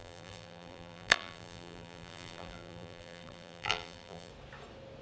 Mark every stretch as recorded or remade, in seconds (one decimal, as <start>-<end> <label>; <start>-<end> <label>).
0.0-4.3 remade; 4.3-5.0 recorded